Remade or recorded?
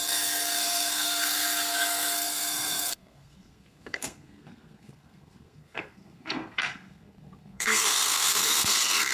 remade